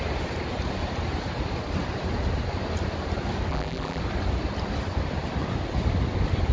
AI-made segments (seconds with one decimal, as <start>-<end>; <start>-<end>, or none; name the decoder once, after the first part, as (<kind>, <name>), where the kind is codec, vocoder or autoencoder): 3.5-4.0 (vocoder, BigVGAN v2)